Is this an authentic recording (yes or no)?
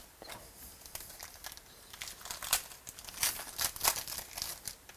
yes